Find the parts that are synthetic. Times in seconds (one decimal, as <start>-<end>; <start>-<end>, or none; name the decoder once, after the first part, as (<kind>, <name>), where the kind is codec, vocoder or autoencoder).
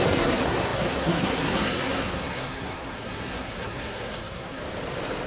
0.0-4.6 (codec, SNAC)